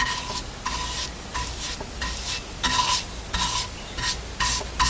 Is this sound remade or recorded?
recorded